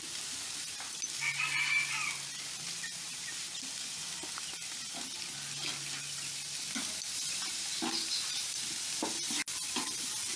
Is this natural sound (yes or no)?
yes